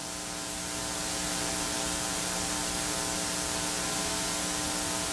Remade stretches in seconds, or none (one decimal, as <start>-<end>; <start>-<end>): none